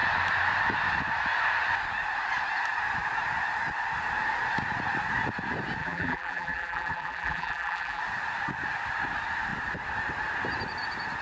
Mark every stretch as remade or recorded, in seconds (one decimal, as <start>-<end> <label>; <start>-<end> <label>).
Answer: 0.0-5.8 recorded; 5.8-8.0 remade; 8.0-11.2 recorded